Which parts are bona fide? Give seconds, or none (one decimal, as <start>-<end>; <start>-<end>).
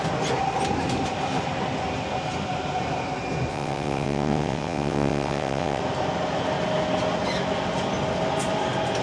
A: 0.0-3.5; 5.8-9.0